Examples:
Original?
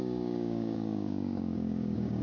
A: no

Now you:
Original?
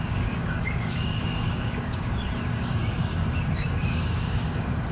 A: no